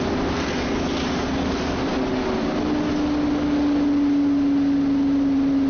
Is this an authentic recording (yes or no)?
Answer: yes